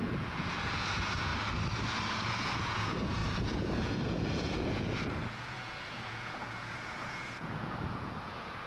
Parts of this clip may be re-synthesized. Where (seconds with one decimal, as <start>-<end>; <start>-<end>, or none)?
0.0-1.3; 2.3-8.7

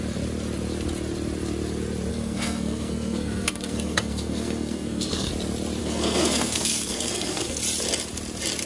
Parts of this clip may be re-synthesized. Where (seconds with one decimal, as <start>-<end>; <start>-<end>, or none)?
2.1-5.3; 5.8-7.6